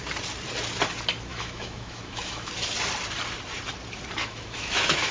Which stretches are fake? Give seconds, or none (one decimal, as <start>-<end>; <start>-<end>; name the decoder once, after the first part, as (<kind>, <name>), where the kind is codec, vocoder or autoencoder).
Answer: 1.3-2.5 (autoencoder, DAC-VAE); 4.2-5.1